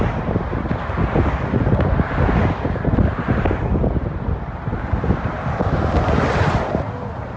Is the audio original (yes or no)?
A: yes